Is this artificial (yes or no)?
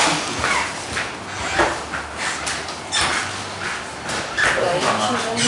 no